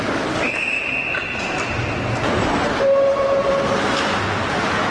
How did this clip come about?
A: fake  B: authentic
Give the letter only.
B